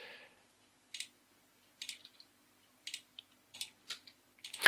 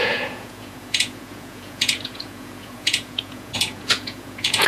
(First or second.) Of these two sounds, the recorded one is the first